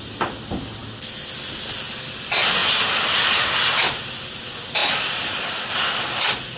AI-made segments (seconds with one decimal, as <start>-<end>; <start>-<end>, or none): none